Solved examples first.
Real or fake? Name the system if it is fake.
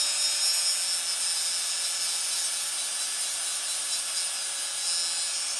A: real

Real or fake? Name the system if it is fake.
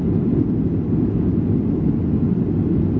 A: real